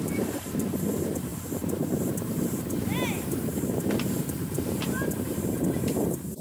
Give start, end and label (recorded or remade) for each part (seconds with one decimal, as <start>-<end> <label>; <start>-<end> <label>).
0.0-6.4 remade